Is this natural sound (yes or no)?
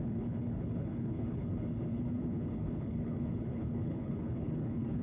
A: no